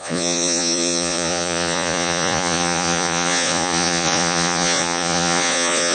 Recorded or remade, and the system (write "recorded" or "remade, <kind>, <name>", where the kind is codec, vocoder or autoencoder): remade, vocoder, Vocos